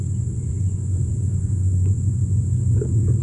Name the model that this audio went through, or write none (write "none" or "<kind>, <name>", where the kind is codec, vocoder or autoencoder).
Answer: vocoder, Vocos